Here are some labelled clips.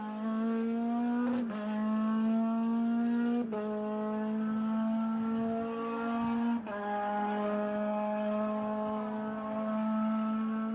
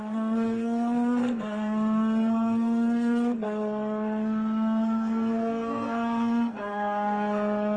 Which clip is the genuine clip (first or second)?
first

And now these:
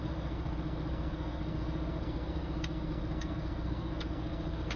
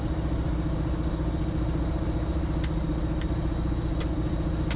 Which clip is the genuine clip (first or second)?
second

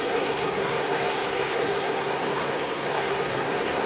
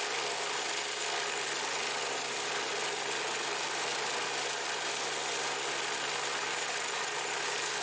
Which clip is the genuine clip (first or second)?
second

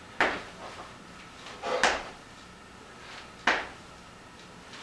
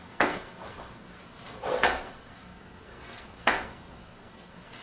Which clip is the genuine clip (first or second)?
first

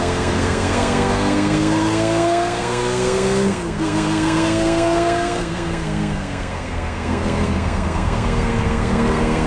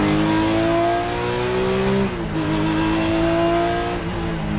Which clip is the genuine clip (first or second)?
second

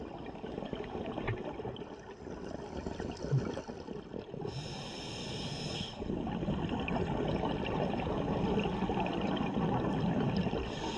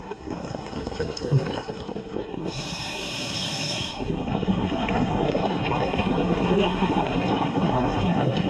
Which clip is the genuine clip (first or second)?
first